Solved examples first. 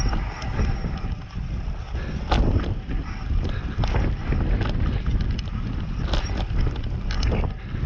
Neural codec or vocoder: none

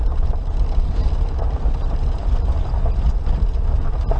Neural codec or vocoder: none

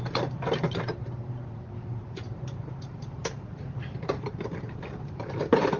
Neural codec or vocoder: vocoder, BigVGAN v2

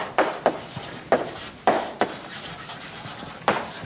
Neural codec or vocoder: none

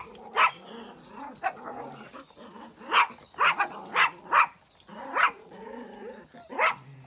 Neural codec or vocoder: none